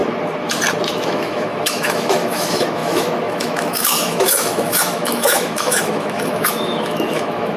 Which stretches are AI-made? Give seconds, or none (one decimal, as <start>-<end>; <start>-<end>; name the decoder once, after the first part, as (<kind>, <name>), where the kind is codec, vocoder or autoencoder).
0.9-7.6 (autoencoder, DAC-VAE)